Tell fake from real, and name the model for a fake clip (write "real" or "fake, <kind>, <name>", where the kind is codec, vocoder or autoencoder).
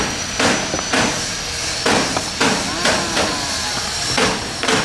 real